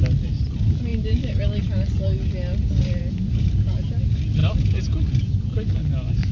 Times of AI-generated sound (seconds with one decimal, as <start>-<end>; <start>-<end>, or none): none